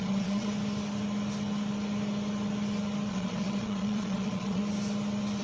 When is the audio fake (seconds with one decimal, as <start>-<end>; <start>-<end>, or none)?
0.0-0.5; 3.1-4.6